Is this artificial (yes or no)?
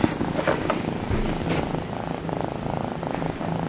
no